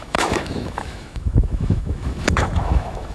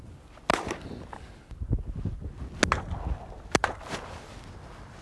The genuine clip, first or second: second